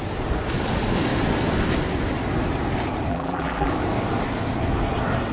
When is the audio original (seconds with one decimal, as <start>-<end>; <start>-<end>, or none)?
0.0-3.1; 3.7-5.3